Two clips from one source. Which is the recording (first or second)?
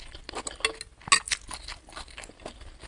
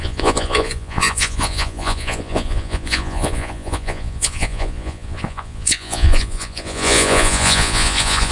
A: first